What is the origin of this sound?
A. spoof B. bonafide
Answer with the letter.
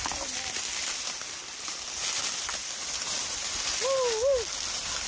B